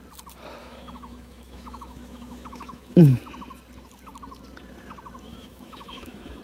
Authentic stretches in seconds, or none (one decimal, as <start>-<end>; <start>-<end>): 0.0-0.6; 3.2-5.3